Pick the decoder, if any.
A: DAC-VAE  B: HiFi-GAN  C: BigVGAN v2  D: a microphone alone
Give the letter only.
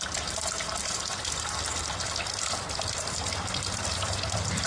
C